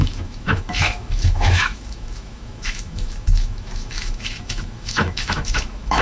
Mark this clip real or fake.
fake